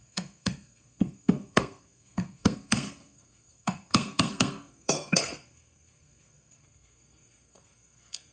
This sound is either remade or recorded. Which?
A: remade